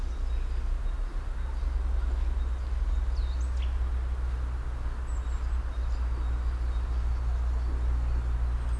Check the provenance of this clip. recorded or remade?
recorded